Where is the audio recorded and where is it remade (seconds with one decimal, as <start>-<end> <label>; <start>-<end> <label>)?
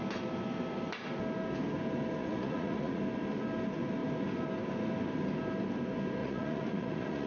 0.0-2.2 recorded; 2.2-3.0 remade; 3.0-6.2 recorded; 6.2-7.3 remade